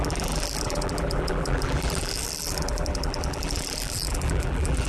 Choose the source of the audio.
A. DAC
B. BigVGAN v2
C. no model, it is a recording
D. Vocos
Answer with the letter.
B